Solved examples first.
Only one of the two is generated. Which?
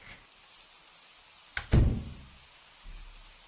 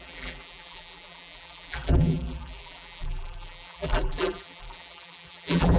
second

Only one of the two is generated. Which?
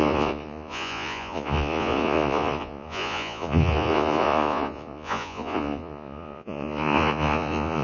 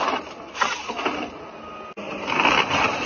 first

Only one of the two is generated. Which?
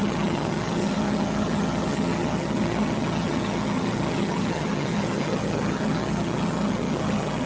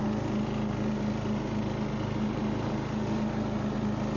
first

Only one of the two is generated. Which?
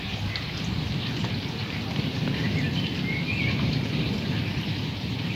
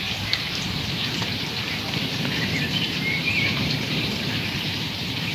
second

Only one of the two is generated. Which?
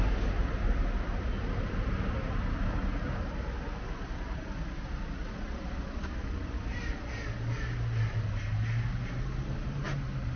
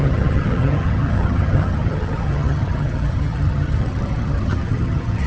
second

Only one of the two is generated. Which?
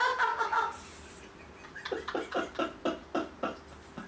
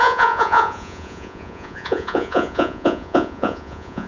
second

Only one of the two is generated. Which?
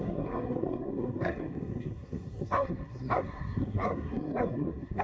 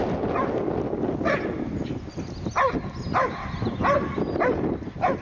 first